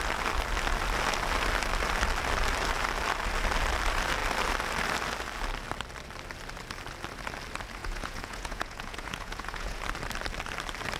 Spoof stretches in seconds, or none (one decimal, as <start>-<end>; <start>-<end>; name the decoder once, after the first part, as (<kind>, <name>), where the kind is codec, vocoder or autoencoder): 7.8-9.8 (vocoder, Vocos)